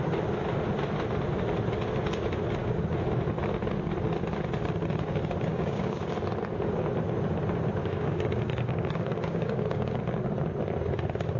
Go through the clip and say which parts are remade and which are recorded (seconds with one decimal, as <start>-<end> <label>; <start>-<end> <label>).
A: 0.0-5.5 recorded; 5.5-6.1 remade; 6.1-7.8 recorded; 7.8-10.0 remade; 10.0-11.4 recorded